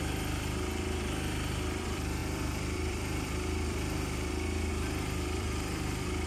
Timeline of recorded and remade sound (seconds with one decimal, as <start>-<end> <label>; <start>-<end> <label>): 0.0-6.3 remade